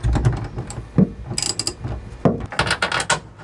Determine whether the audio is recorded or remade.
recorded